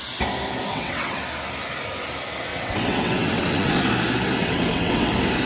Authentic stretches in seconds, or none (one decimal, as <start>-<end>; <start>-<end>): 0.0-0.7; 1.2-2.5; 3.8-4.4; 5.1-5.5